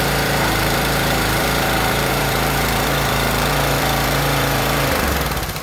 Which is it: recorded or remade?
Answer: remade